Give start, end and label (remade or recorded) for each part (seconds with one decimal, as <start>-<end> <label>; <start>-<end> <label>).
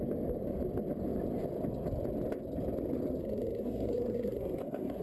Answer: 0.0-3.2 recorded; 3.2-5.0 remade